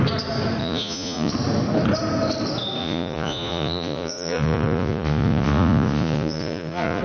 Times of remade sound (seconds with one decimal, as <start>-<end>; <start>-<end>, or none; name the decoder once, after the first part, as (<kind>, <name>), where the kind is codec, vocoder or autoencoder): 0.6-1.3 (vocoder, Vocos); 2.8-7.0

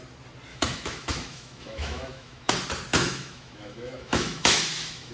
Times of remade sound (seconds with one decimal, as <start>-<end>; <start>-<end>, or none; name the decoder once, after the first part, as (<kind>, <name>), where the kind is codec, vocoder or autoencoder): 0.5-2.5 (autoencoder, DAC-VAE); 2.9-5.1

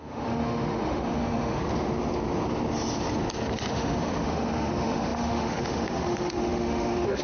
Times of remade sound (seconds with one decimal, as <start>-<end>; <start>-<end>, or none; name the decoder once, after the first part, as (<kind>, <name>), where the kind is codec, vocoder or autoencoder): 0.0-1.6 (autoencoder, DAC-VAE); 3.7-7.2

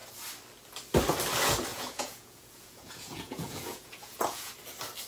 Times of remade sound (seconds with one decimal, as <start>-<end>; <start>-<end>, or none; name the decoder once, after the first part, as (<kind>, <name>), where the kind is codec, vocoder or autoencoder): 1.7-4.5 (vocoder, Vocos)

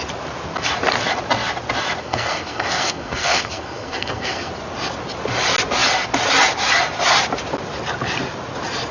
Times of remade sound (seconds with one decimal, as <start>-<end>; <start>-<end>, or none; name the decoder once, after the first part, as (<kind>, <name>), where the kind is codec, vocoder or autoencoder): 2.0-4.5 (codec, SNAC)

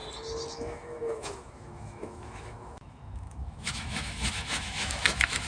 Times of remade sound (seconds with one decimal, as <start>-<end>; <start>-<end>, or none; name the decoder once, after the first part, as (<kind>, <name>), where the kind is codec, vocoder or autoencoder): 0.5-5.5 (autoencoder, DAC-VAE)